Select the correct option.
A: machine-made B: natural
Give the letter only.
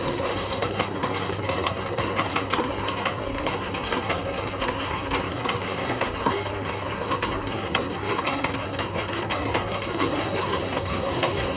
A